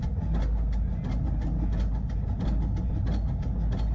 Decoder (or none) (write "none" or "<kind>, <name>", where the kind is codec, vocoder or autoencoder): none